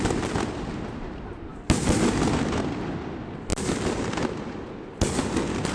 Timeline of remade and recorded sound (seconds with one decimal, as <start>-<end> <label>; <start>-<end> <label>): 0.0-5.7 recorded